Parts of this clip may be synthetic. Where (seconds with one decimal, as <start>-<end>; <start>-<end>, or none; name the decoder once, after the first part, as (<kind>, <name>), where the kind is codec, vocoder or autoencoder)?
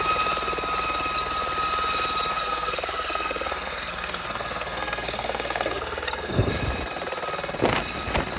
2.3-6.5 (codec, SNAC)